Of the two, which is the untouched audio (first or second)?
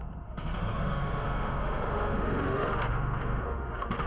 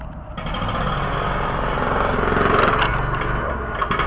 second